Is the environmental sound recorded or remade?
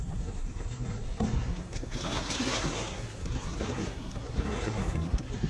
remade